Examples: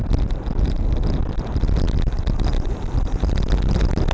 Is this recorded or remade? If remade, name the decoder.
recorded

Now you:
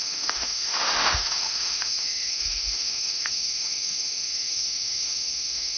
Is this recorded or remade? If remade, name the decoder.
remade, autoencoder, DAC-VAE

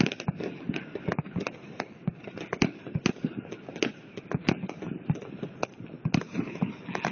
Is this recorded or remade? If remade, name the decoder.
recorded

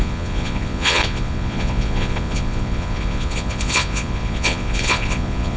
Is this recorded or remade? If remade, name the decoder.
remade, vocoder, Vocos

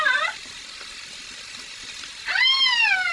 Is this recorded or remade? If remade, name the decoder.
recorded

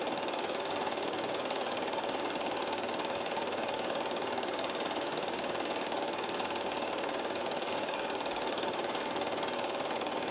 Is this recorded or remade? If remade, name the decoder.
remade, codec, DAC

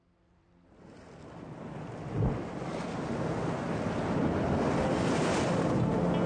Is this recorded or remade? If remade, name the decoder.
recorded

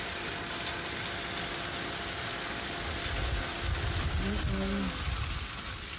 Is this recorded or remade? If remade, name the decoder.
recorded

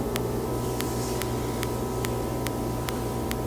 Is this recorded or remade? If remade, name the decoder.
remade, vocoder, BigVGAN v2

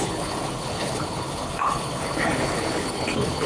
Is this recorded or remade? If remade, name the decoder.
remade, codec, HILCodec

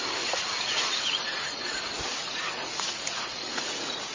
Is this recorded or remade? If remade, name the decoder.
remade, vocoder, Vocos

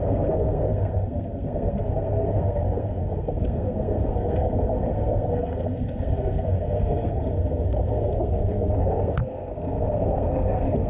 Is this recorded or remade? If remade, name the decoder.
remade, codec, SNAC